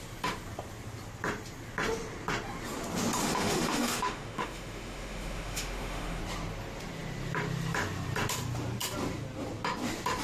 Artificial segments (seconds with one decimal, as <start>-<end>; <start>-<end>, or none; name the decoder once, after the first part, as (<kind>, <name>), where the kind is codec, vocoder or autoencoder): 3.2-6.2 (autoencoder, DAC-VAE)